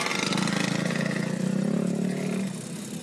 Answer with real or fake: real